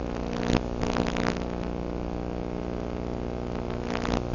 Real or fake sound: real